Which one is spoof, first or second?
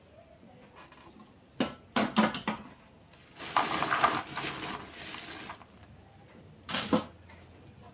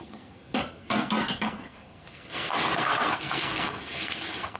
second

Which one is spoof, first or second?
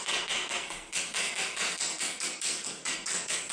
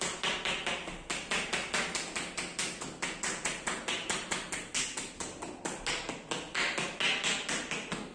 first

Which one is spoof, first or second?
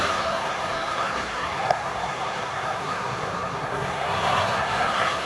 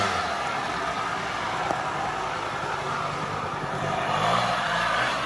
first